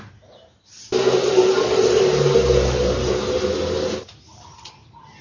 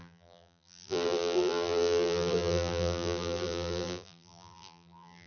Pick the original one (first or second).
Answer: first